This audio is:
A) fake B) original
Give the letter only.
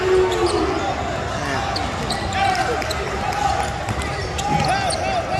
B